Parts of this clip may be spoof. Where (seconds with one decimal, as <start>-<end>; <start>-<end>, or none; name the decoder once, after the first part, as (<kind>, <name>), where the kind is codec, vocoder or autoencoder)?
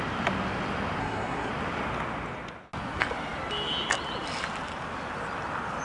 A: 1.0-1.5 (codec, SNAC)